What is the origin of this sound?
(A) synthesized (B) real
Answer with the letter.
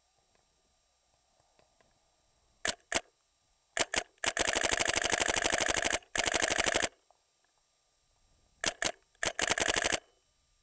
B